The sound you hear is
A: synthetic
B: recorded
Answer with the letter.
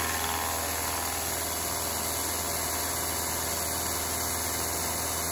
B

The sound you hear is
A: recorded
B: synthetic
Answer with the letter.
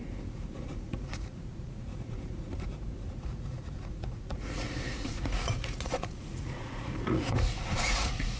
B